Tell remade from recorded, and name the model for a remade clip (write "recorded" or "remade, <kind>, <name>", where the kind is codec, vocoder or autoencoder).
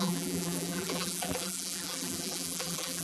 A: remade, vocoder, BigVGAN v2